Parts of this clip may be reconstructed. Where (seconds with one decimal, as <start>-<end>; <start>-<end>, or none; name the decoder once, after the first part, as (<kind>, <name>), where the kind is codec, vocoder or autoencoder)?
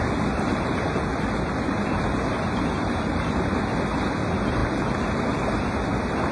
none